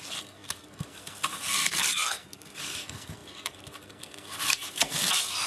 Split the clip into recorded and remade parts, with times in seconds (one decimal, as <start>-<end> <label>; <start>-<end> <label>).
0.0-5.5 remade

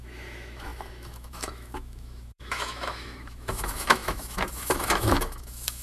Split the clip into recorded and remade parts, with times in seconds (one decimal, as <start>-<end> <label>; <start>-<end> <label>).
0.0-5.8 remade